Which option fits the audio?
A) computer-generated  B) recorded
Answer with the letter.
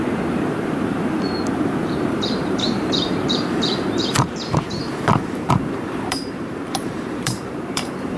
A